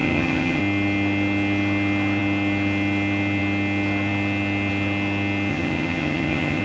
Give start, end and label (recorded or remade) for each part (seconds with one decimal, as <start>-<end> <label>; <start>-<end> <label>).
0.0-0.6 remade; 0.6-5.5 recorded; 5.5-6.6 remade